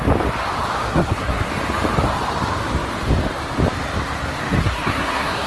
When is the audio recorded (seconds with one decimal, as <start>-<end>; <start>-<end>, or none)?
0.0-0.9; 1.5-4.6